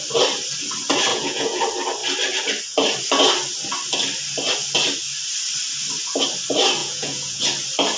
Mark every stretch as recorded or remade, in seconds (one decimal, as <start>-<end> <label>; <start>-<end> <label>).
0.0-1.1 recorded; 1.1-1.6 remade; 1.6-6.8 recorded; 6.8-7.4 remade; 7.4-8.0 recorded